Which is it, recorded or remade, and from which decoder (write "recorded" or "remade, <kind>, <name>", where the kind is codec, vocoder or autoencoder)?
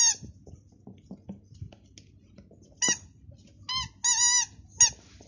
recorded